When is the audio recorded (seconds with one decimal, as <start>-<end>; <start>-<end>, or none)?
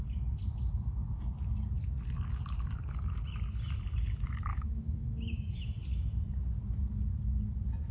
0.0-4.5; 5.6-7.9